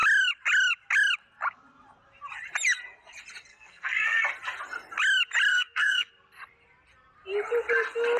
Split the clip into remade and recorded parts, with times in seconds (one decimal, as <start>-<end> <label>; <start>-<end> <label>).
0.0-3.5 recorded; 3.5-4.2 remade; 4.2-5.5 recorded; 5.5-6.1 remade; 6.1-8.2 recorded